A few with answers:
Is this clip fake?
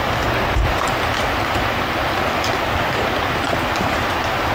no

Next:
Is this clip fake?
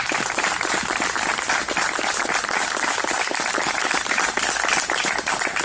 no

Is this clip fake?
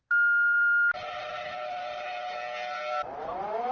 no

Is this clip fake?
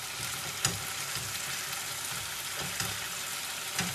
no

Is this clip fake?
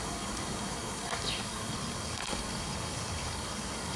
yes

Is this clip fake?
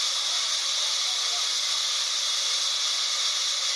no